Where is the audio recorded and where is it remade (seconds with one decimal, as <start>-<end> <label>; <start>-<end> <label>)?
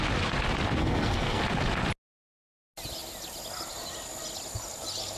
0.0-0.8 recorded; 0.8-1.4 remade; 1.4-5.2 recorded